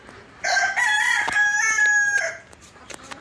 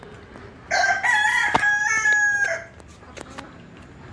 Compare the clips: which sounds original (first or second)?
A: second